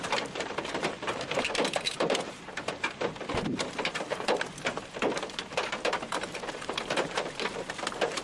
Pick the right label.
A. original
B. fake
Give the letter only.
B